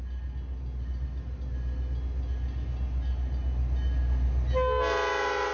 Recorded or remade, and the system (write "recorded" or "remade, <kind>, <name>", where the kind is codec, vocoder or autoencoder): recorded